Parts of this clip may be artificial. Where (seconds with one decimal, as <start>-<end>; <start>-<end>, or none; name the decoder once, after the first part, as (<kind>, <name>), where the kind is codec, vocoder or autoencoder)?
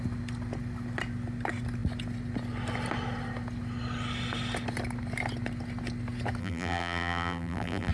6.4-7.9 (vocoder, BigVGAN v2)